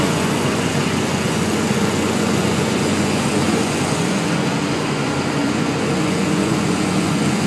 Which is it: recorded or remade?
remade